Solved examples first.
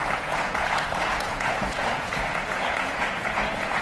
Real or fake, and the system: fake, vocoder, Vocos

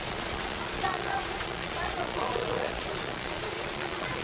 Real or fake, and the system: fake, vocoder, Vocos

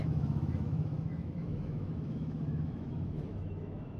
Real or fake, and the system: fake, autoencoder, DAC-VAE